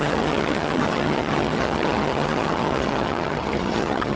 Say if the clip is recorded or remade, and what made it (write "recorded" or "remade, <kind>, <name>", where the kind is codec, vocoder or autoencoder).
remade, vocoder, HiFi-GAN